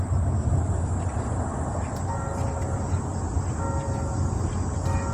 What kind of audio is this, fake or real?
real